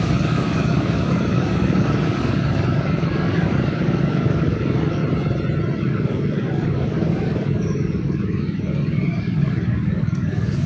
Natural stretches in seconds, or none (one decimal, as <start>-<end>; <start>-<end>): 5.0-5.8